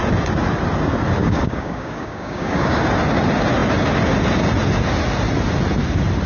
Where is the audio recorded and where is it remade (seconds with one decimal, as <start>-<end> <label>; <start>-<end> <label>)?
0.0-1.2 recorded; 1.2-2.8 remade; 2.8-6.3 recorded